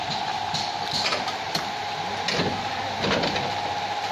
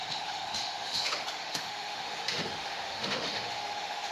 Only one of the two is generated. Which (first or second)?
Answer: second